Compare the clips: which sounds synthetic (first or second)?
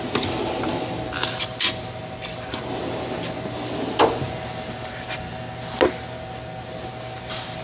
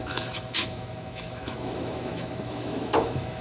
second